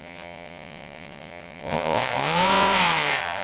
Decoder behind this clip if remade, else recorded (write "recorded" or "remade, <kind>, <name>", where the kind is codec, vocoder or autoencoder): remade, vocoder, WaveNeXt